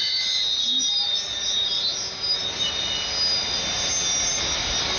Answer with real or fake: real